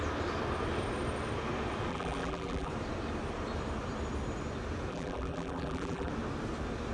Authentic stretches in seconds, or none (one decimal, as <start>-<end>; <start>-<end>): 0.0-1.9; 2.7-4.9; 6.1-6.9